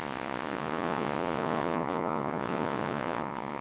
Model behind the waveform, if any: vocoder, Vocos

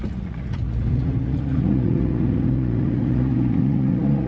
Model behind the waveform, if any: vocoder, Vocos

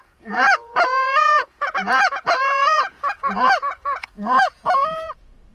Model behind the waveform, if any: vocoder, Vocos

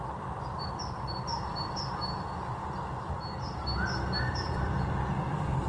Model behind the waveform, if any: none